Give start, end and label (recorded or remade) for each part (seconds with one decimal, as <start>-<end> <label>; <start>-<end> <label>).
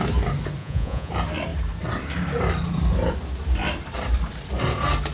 0.0-0.6 recorded; 0.6-1.1 remade; 1.1-5.1 recorded